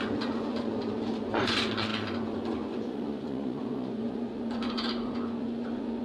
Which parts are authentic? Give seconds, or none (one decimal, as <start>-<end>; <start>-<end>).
none